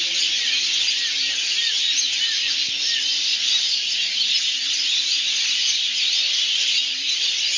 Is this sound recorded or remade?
recorded